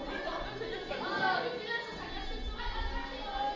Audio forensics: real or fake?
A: real